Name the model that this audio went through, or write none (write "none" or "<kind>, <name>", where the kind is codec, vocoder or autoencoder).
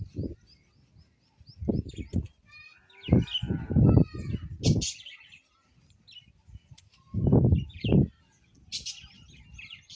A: none